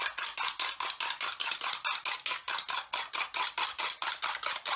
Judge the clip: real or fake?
real